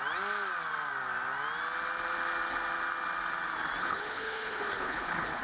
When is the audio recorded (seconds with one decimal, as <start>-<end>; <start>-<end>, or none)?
0.0-3.8